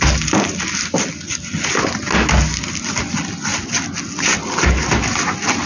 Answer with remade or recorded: recorded